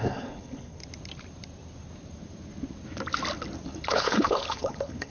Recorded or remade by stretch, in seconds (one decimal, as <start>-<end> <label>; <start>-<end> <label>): 0.0-0.8 remade; 0.8-3.9 recorded; 3.9-5.1 remade